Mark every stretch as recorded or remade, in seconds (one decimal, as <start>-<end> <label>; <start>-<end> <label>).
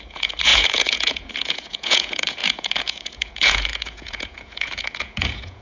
0.0-5.6 remade